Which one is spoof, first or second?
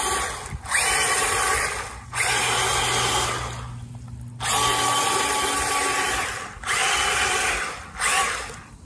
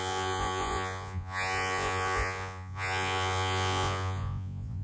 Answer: second